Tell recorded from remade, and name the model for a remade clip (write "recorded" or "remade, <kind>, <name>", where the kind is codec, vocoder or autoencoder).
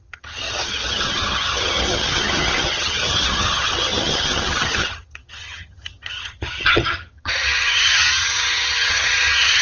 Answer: remade, vocoder, HiFi-GAN